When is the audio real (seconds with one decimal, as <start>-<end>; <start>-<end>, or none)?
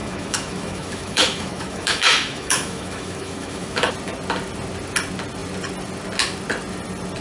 3.9-7.2